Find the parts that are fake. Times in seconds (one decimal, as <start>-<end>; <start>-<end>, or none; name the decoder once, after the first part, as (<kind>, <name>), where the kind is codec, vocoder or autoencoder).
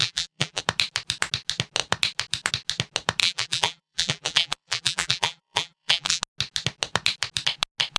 0.0-0.6 (vocoder, BigVGAN v2); 3.2-6.2